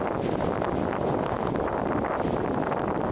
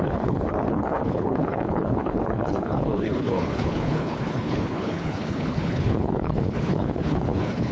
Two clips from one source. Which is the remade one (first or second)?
second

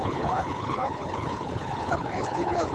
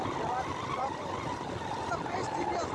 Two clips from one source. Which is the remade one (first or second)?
first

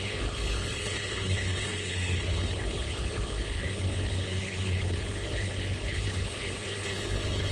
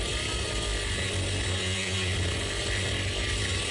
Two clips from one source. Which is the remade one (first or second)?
first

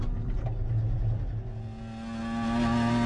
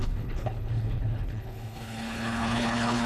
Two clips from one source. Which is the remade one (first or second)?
second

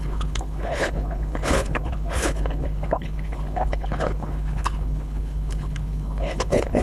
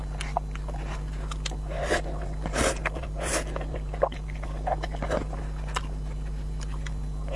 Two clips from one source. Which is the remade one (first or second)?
first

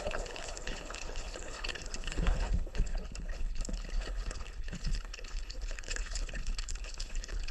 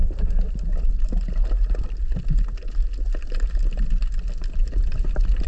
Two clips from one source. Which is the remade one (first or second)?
first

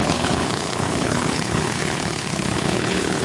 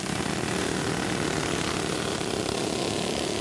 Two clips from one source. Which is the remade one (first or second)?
first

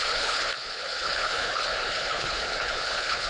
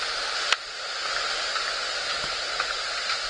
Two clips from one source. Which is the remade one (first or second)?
first